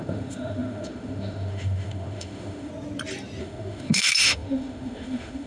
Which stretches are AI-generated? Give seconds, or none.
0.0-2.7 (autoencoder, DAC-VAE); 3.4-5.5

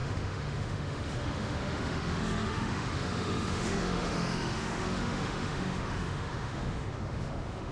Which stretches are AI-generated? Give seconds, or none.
0.0-7.7 (autoencoder, DAC-VAE)

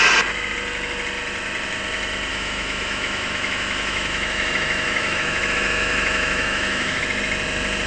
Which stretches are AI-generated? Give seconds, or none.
2.3-7.0 (autoencoder, DAC-VAE)

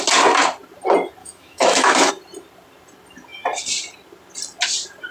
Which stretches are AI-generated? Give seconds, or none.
1.2-2.1 (autoencoder, DAC-VAE)

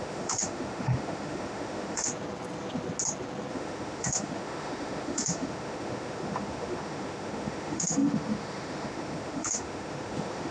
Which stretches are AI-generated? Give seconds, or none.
0.0-2.1 (autoencoder, DAC-VAE); 3.5-10.5

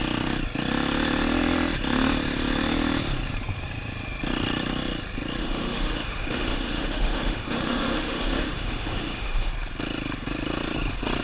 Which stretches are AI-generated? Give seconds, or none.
5.4-9.5 (autoencoder, DAC-VAE)